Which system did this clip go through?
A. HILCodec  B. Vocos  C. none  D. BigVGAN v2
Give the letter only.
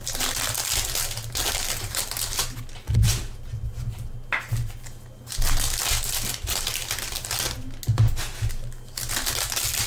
C